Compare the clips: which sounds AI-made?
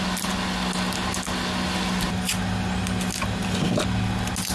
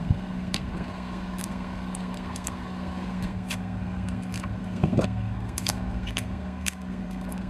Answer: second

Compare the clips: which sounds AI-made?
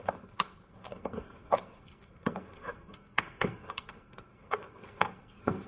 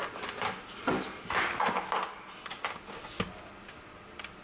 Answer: first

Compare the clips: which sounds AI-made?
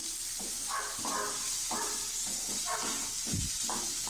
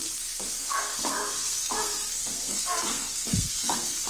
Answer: second